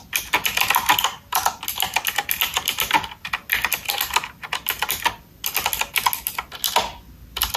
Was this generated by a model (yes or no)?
no